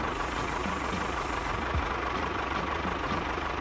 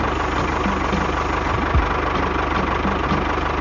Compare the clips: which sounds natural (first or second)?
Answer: second